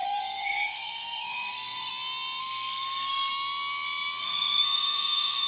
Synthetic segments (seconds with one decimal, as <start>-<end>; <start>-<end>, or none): 0.0-1.9; 2.4-3.3; 4.2-5.5